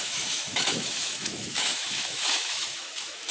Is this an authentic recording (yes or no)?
no